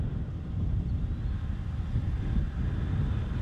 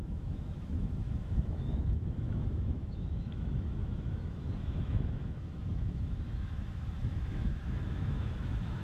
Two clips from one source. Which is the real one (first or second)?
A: first